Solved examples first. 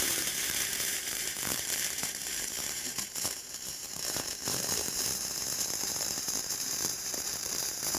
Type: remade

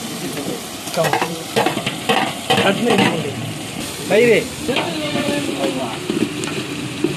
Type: remade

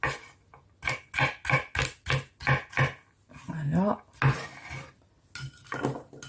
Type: recorded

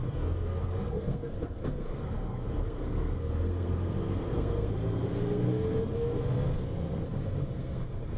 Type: remade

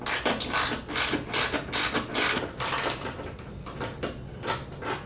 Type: recorded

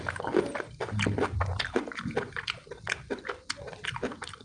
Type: remade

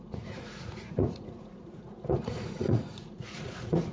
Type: remade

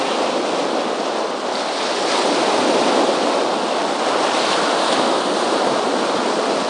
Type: recorded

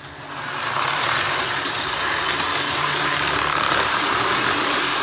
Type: recorded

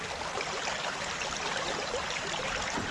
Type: recorded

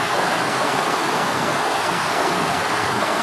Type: remade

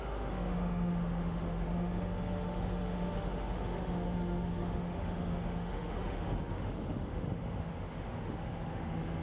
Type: remade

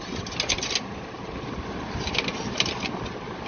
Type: recorded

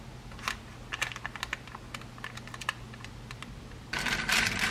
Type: recorded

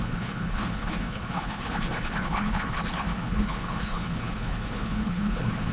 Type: remade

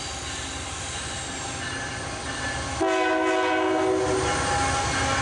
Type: recorded